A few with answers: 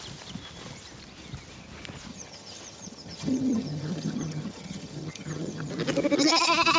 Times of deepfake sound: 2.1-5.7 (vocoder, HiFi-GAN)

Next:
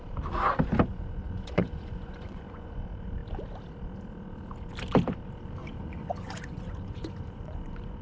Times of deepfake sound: 0.9-2.8 (vocoder, Vocos); 5.6-8.0

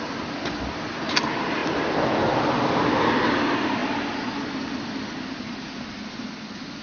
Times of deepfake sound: none